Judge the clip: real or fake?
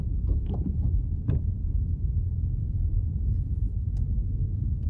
fake